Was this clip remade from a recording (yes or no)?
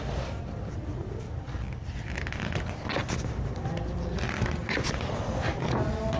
no